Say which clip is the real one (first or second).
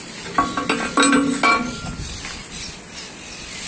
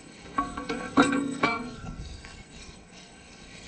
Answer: first